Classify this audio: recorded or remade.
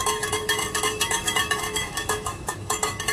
remade